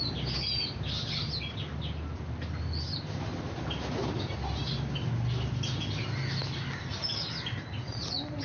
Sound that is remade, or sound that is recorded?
recorded